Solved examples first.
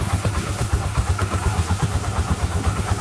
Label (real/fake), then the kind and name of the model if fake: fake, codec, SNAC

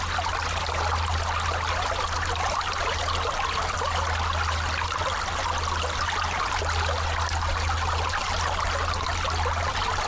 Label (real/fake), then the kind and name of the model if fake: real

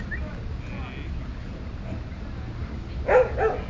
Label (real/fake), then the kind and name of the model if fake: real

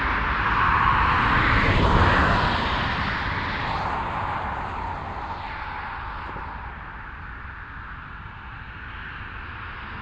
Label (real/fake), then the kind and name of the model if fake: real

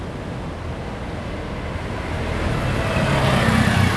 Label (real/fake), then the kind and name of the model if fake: real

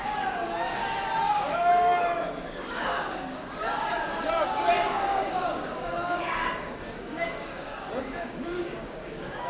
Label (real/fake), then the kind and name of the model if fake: fake, codec, DAC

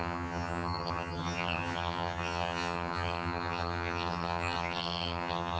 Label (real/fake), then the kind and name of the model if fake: fake, vocoder, HiFi-GAN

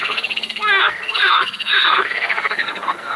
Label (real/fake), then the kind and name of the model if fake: fake, codec, SNAC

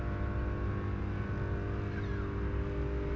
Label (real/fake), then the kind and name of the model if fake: real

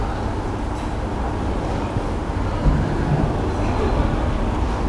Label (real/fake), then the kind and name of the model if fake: real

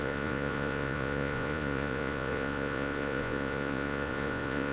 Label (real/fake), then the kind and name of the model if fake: fake, vocoder, Vocos